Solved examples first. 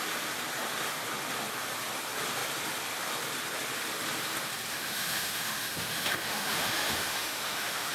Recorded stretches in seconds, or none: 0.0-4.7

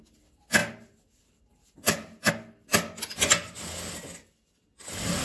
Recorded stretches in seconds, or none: 0.0-0.6; 2.3-5.2

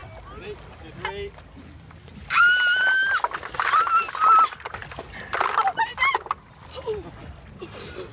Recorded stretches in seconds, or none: 0.0-8.1

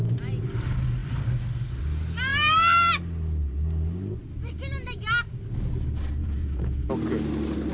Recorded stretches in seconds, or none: 0.0-6.2; 6.9-7.7

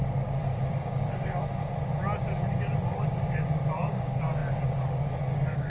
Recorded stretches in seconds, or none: 1.6-2.9

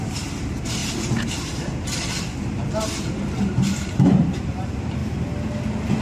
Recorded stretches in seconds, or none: 5.0-6.0

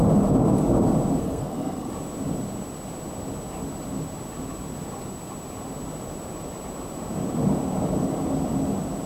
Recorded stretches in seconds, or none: 0.0-1.2; 1.9-9.1

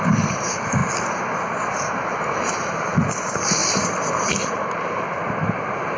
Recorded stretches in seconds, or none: 0.8-2.4